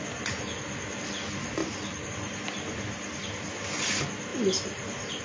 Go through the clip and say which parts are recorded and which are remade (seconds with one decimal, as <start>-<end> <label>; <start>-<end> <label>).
0.0-5.2 recorded